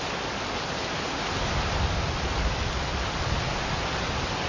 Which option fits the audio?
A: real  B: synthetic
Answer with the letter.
A